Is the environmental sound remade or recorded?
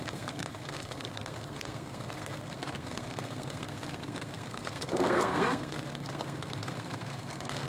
remade